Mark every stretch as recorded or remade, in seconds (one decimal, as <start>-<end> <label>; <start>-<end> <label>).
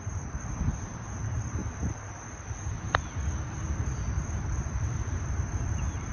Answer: 0.0-1.6 remade; 1.6-5.3 recorded; 5.3-6.1 remade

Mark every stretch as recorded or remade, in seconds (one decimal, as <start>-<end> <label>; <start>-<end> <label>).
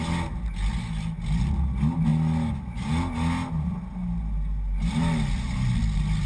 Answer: 0.0-6.3 recorded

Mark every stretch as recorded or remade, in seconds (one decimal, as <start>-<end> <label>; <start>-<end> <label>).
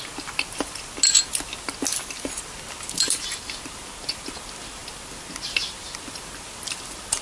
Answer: 0.0-7.2 recorded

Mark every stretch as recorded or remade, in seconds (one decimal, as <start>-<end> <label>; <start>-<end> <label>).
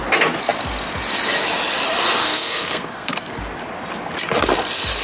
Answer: 0.0-2.2 recorded; 2.2-3.4 remade; 3.4-5.0 recorded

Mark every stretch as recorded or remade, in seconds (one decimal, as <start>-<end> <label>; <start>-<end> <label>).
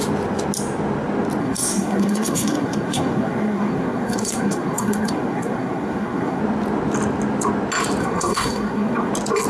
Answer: 0.0-1.4 recorded; 1.4-6.4 remade; 6.4-8.0 recorded; 8.0-9.1 remade; 9.1-9.5 recorded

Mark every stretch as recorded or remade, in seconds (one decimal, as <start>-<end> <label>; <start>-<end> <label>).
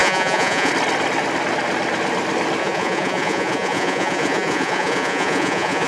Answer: 0.0-0.7 remade; 0.7-2.6 recorded; 2.6-5.9 remade